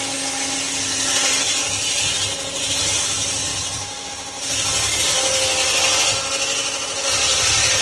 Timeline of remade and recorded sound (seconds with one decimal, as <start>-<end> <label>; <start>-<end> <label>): 0.0-7.8 recorded